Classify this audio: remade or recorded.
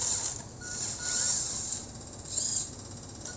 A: recorded